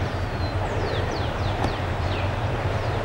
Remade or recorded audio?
remade